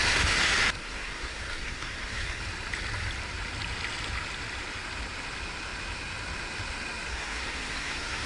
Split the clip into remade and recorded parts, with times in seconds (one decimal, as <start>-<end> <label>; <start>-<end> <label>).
0.0-0.8 recorded; 0.8-2.4 remade; 2.4-7.1 recorded; 7.1-8.3 remade